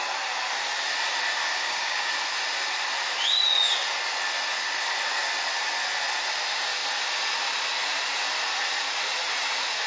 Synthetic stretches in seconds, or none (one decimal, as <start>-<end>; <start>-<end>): 1.5-2.1